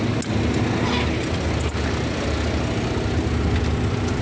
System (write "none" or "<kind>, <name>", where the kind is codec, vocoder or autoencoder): none